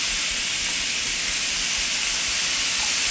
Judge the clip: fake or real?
real